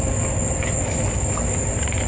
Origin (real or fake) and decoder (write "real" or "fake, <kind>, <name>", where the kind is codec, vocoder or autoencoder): real